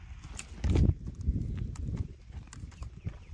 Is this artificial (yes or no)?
no